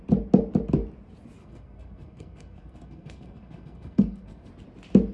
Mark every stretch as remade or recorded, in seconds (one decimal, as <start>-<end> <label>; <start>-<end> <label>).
0.0-1.4 recorded; 1.4-4.5 remade; 4.5-5.1 recorded